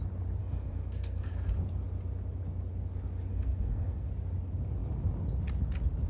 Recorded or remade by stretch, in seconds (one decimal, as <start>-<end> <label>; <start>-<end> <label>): 0.0-0.4 recorded; 0.4-1.3 remade; 1.3-3.3 recorded; 3.3-4.1 remade; 4.1-6.1 recorded